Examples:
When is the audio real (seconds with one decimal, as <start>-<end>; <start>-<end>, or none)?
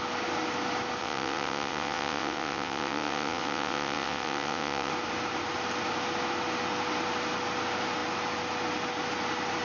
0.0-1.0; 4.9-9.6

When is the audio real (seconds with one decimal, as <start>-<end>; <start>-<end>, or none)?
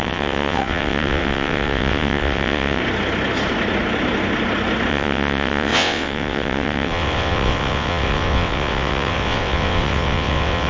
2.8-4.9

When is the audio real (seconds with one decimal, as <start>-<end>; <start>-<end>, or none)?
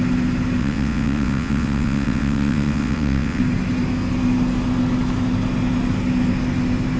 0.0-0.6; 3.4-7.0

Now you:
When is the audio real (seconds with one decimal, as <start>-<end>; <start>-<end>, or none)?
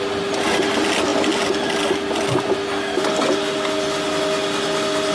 0.0-5.1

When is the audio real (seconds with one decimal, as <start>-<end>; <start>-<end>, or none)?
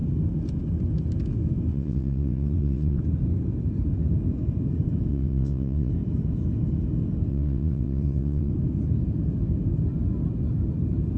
0.0-1.7; 3.0-5.1; 5.9-7.3; 8.5-11.2